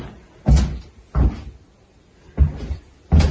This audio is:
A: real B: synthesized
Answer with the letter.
A